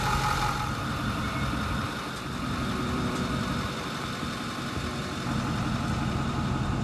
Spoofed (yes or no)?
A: yes